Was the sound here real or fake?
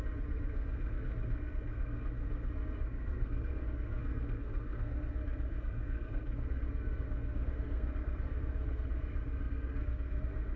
fake